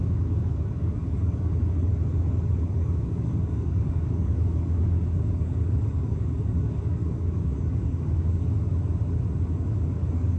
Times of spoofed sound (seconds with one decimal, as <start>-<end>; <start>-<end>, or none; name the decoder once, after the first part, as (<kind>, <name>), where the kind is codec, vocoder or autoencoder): 0.0-1.9 (codec, DAC); 2.6-8.7; 9.6-10.4